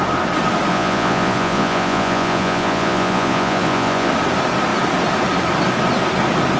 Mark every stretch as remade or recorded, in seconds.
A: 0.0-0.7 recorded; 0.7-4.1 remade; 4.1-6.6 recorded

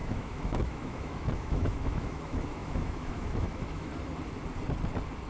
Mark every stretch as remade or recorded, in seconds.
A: 0.0-3.9 remade; 3.9-5.3 recorded